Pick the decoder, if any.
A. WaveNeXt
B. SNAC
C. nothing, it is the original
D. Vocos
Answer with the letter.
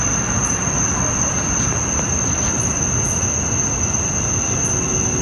C